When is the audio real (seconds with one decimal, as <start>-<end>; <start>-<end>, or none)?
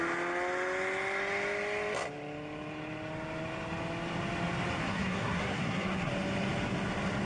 0.0-4.8; 6.1-7.2